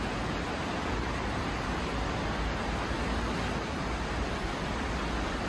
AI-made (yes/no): no